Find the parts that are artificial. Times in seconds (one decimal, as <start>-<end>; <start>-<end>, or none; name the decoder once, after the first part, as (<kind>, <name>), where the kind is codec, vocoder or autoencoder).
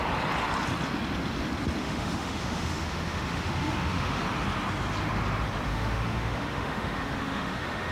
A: 1.8-4.2 (autoencoder, DAC-VAE); 5.7-7.9